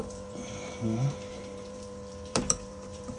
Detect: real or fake fake